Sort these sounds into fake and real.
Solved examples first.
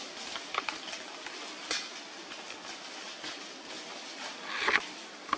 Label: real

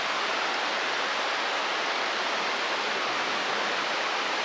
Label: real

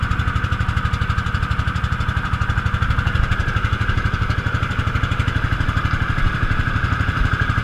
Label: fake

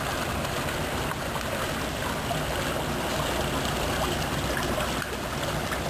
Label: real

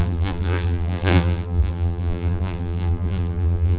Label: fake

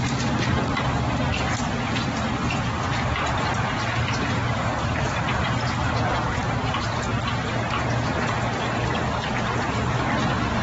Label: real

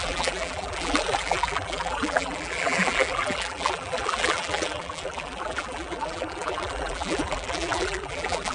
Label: fake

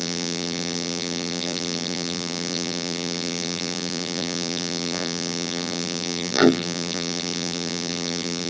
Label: fake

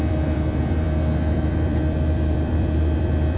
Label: fake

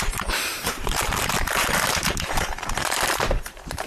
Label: fake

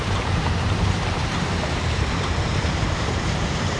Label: fake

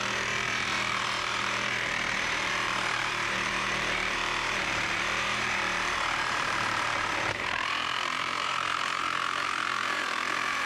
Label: fake